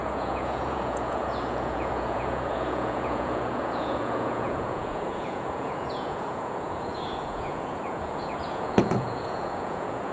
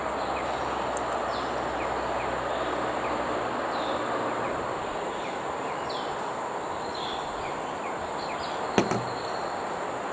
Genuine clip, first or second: second